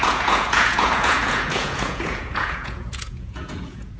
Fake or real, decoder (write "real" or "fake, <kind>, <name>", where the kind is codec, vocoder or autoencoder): fake, vocoder, Vocos